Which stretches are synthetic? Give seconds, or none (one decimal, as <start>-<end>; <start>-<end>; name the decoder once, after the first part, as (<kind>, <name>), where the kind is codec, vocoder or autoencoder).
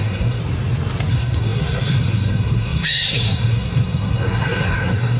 0.0-0.4 (codec, SNAC); 1.1-5.2